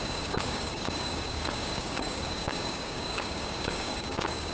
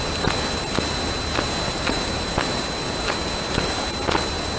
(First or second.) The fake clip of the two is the first